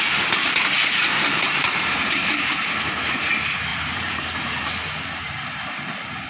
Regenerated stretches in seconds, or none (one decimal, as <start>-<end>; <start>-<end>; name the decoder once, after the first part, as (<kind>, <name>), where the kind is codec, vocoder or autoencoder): 0.4-3.3 (vocoder, BigVGAN v2); 3.7-5.4